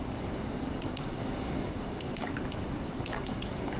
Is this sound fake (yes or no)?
yes